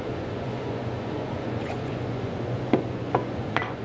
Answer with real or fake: fake